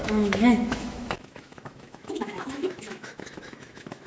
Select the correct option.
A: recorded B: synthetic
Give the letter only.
B